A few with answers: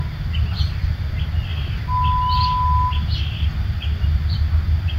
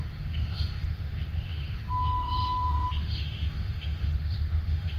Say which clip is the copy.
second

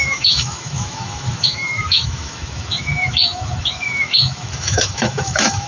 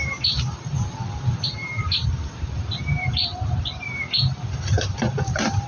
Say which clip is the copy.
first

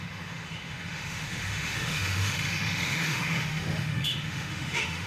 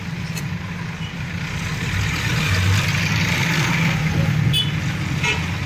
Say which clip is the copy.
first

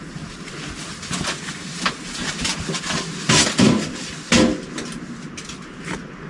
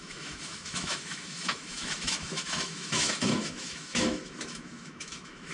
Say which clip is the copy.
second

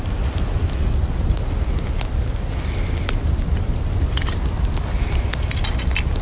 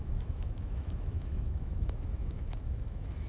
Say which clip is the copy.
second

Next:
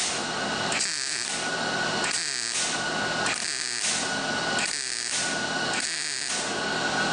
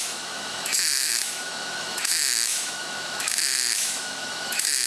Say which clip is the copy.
second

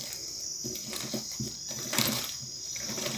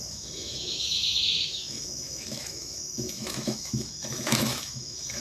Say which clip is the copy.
second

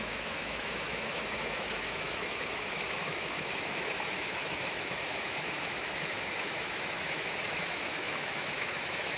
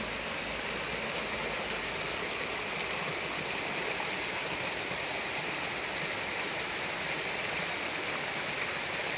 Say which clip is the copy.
first